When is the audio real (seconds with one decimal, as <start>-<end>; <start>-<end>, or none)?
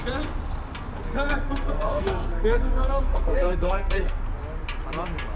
0.0-1.3; 4.2-5.4